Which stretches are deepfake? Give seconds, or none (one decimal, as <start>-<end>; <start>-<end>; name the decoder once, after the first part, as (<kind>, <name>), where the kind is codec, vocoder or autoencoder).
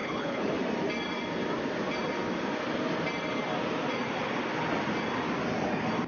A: 0.0-0.6 (codec, HILCodec)